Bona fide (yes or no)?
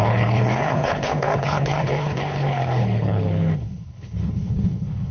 no